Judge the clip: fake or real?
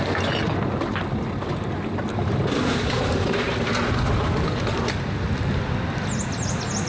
real